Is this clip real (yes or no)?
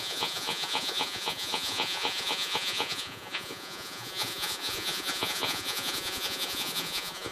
no